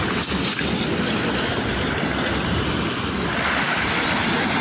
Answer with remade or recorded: recorded